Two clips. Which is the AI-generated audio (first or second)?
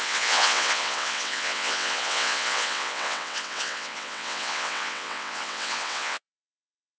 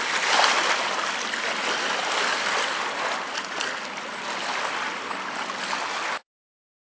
first